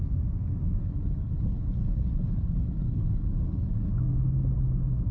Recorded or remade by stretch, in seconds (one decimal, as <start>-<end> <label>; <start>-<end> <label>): 0.0-0.8 recorded; 0.8-3.9 remade; 3.9-5.1 recorded